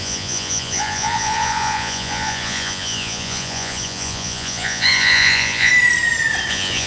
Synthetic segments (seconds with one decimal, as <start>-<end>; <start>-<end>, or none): 0.0-5.7; 6.5-6.9